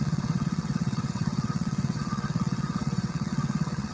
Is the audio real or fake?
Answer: fake